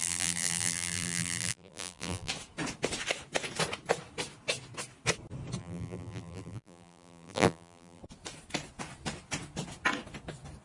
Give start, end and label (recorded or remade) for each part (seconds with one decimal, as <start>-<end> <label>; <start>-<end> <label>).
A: 0.0-2.3 remade; 2.3-5.6 recorded; 5.6-8.0 remade; 8.0-10.6 recorded